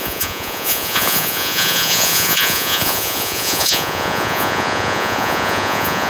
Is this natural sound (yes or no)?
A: no